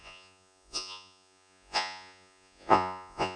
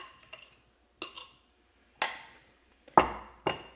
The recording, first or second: second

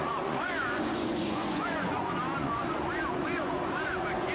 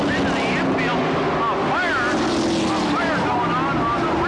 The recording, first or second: second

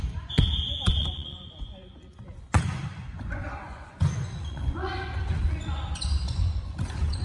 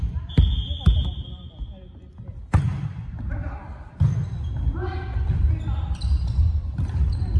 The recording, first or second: second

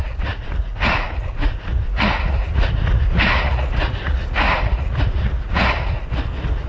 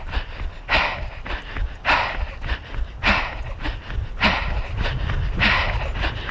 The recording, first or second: second